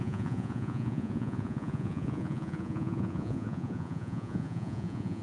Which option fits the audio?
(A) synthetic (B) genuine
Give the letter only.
A